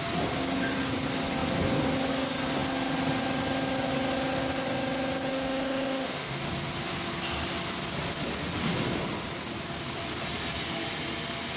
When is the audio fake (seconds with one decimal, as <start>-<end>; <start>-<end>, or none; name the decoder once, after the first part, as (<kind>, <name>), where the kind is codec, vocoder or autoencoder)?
5.3-6.4 (autoencoder, DAC-VAE)